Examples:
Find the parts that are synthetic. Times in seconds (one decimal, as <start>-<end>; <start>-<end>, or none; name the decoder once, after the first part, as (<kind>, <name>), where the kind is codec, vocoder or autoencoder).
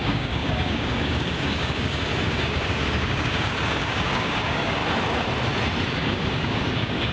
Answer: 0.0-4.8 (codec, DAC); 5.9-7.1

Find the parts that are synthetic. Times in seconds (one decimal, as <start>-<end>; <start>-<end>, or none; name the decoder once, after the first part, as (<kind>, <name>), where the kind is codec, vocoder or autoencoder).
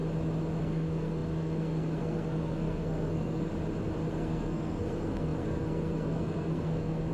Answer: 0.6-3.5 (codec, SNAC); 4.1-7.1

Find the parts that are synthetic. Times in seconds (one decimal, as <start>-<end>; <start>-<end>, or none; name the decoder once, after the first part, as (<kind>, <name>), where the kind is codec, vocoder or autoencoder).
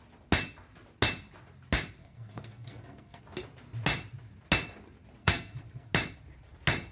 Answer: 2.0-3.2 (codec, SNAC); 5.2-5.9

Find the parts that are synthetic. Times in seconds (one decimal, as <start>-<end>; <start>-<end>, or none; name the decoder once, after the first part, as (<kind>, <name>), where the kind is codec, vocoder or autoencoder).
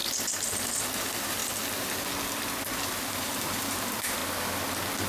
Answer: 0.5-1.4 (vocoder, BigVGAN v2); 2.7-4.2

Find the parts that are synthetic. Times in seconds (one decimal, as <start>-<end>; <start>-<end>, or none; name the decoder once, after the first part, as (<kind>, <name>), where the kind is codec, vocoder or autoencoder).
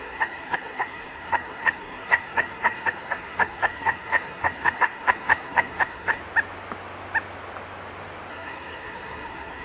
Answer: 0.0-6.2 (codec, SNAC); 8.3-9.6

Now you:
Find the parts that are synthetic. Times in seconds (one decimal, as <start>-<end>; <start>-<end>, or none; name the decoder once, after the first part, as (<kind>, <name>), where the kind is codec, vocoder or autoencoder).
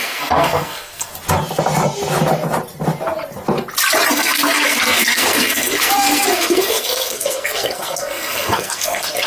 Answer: 0.0-1.1 (codec, SNAC); 4.1-9.3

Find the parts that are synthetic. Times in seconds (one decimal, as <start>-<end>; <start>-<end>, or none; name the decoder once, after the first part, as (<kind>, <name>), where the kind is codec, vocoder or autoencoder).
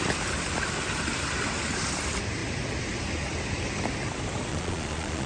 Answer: 4.5-5.3 (vocoder, Vocos)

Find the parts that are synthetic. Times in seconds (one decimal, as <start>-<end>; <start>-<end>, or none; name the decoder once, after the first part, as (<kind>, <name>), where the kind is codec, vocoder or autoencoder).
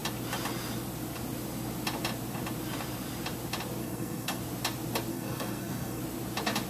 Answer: 3.8-4.4 (codec, SNAC); 5.1-6.0